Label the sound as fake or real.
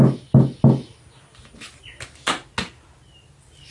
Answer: real